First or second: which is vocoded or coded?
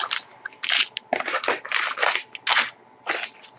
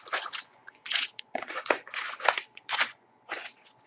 second